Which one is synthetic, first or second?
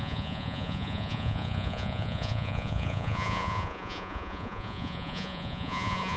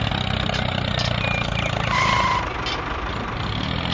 first